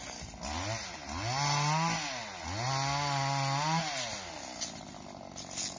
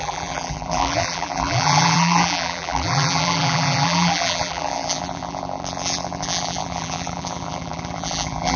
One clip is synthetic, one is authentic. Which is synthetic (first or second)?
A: second